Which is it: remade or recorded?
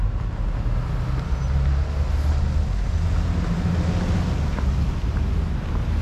recorded